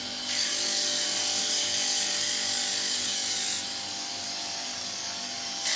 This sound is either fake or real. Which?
fake